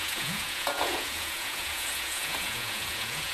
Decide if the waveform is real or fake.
fake